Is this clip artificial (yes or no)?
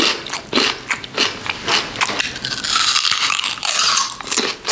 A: no